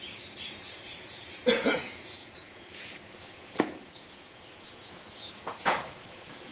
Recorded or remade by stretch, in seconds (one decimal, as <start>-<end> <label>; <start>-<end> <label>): 0.0-6.5 remade

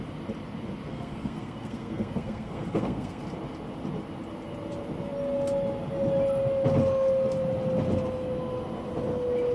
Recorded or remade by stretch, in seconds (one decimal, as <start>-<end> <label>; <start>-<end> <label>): 0.0-0.9 recorded; 0.9-3.2 remade; 3.2-9.5 recorded

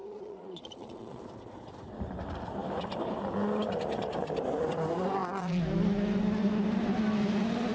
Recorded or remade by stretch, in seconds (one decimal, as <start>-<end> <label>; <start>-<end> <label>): 0.0-1.2 remade; 1.2-7.7 recorded

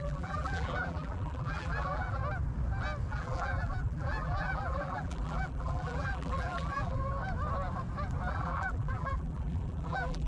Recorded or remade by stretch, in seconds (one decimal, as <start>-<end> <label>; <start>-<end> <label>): 0.0-2.2 remade; 2.2-3.1 recorded; 3.1-7.0 remade; 7.0-8.3 recorded; 8.3-10.3 remade

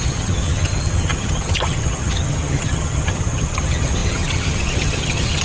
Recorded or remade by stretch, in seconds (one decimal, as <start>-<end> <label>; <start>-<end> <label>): 0.0-5.4 remade

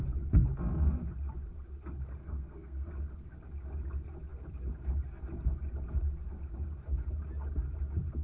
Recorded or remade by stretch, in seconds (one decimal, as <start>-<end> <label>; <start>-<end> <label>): 0.0-2.2 recorded; 2.2-2.9 remade; 2.9-8.2 recorded

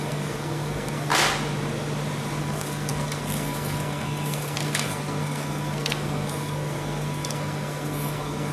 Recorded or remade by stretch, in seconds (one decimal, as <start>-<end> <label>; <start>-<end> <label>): 0.0-1.1 remade; 1.1-2.4 recorded; 2.4-8.5 remade

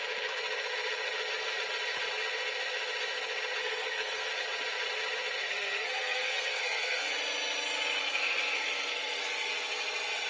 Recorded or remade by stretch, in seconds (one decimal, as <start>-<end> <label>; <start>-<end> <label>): 0.0-3.6 recorded; 3.6-4.3 remade; 4.3-5.5 recorded; 5.5-7.1 remade; 7.1-8.0 recorded; 8.0-9.2 remade; 9.2-10.3 recorded